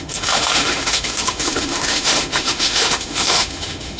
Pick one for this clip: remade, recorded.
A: remade